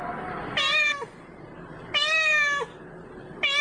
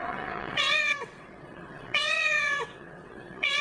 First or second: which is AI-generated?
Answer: second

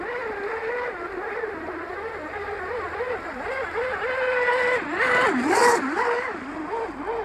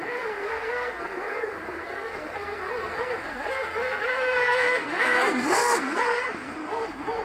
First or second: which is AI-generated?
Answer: second